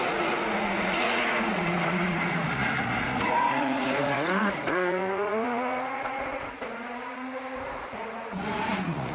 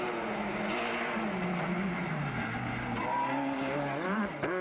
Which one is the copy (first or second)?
first